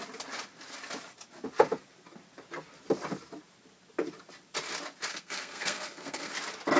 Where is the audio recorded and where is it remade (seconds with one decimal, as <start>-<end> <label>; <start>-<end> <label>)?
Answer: 0.0-5.1 recorded; 5.1-6.3 remade; 6.3-6.8 recorded